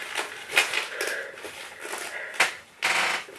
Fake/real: real